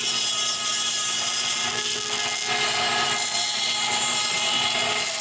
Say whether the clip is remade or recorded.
recorded